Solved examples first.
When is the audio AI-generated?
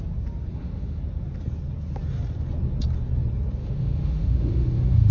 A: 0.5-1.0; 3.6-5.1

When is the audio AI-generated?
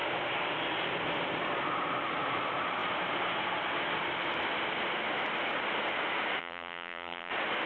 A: 6.4-7.3